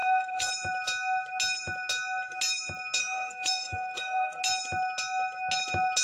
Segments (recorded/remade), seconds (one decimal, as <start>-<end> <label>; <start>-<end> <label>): 0.0-0.5 remade; 0.5-3.0 recorded; 3.0-4.4 remade; 4.4-6.0 recorded